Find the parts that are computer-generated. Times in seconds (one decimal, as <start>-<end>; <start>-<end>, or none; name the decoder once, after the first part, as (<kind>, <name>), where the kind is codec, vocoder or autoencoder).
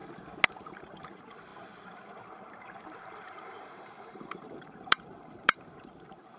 0.5-6.4 (vocoder, BigVGAN v2)